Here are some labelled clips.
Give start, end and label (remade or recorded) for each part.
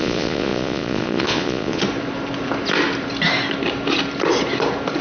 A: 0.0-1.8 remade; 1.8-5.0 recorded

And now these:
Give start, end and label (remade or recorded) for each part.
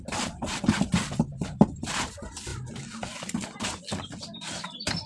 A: 0.0-5.1 recorded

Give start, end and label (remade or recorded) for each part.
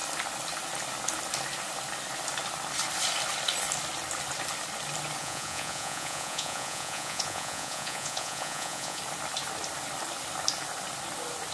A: 0.0-5.2 recorded; 5.2-9.0 remade; 9.0-11.5 recorded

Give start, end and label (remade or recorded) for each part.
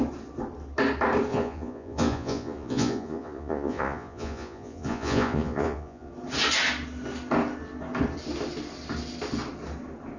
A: 0.0-1.3 recorded; 1.3-6.1 remade; 6.1-10.2 recorded